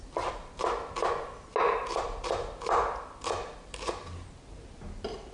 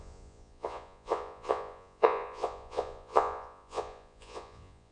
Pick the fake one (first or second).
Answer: second